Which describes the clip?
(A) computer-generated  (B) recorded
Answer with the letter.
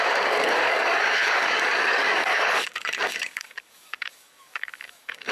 A